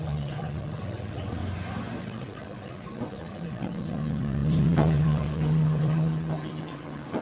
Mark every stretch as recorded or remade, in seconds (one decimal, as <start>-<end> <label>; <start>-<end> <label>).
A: 0.0-1.4 remade; 1.4-2.0 recorded; 2.0-7.2 remade